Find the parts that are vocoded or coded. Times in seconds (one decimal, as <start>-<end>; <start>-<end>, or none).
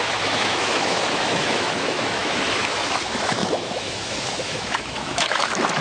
0.0-5.8